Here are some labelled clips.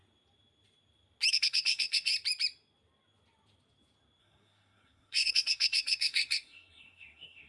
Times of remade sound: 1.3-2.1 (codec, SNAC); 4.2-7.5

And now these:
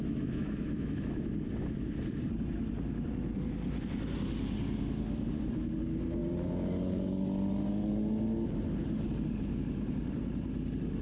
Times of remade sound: 0.0-1.3 (autoencoder, DAC-VAE)

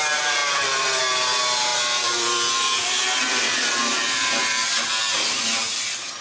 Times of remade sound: 0.4-1.0 (vocoder, BigVGAN v2); 1.7-5.4

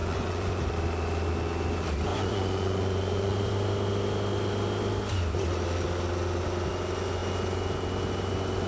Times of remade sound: 0.0-0.6 (vocoder, Vocos); 2.1-3.5